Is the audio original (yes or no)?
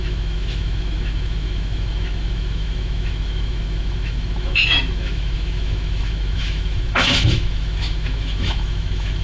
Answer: no